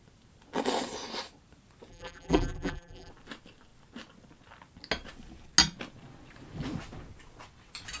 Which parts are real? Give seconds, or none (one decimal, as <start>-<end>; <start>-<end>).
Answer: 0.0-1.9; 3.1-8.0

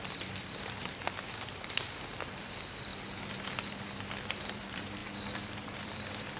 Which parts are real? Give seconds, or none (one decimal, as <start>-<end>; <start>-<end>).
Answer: 2.9-4.0; 5.0-5.6

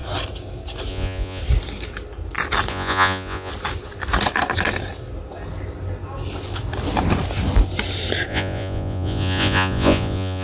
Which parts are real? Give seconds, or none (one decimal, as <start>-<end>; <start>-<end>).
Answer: 0.0-0.9; 1.4-2.7; 3.5-8.3

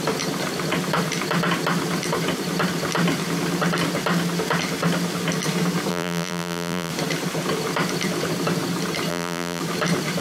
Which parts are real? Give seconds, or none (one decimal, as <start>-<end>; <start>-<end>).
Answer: 0.0-5.9; 6.9-9.1; 9.6-10.2